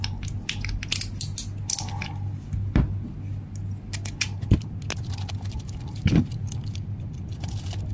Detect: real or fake real